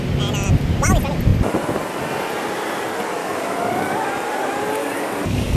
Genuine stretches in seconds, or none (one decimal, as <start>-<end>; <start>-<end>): 0.0-3.2; 4.1-4.8